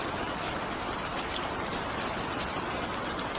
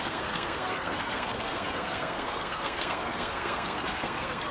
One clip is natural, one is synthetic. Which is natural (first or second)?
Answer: first